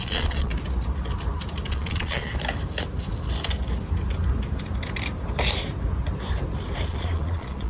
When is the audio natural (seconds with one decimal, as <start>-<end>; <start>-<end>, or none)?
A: 0.5-1.7; 2.3-6.9

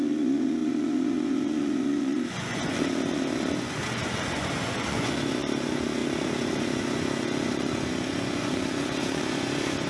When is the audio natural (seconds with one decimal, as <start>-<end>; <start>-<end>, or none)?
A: none